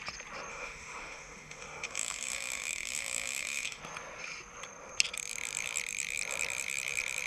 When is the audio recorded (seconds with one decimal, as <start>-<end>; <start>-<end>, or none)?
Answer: 0.0-0.5; 3.8-7.3